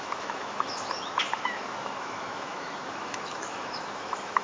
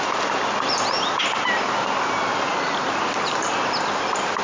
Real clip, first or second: second